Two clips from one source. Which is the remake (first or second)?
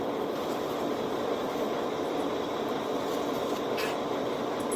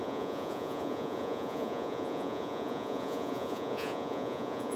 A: second